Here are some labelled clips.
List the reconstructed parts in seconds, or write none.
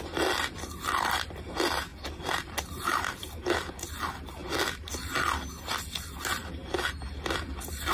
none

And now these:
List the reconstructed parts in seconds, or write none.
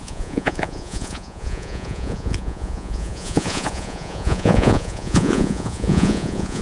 0.0-6.6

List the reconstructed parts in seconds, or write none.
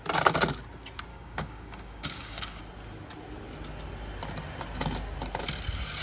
1.1-2.6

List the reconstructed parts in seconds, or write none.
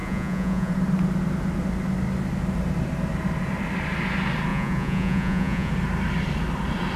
0.0-0.7; 4.5-5.7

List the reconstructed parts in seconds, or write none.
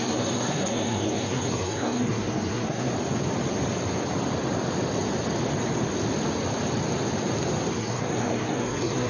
0.0-2.9; 7.7-9.1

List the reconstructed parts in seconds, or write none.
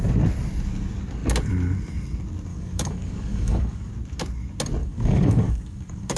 2.5-3.9; 4.8-6.2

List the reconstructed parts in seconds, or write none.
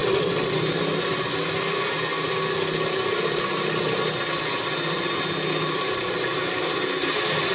none